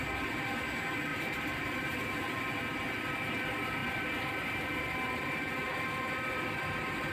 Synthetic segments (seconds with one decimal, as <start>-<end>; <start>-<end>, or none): 1.1-2.4; 3.8-5.7